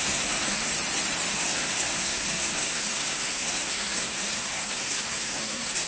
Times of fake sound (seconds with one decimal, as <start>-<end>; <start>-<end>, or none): 0.0-0.7; 1.3-5.9